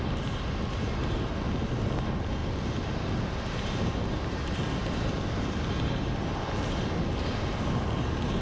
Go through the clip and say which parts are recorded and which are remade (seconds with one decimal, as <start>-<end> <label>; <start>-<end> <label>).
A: 0.0-8.4 recorded